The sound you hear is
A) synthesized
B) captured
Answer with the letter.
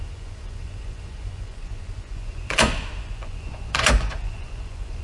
A